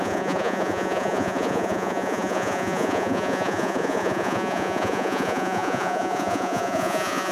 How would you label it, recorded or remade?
remade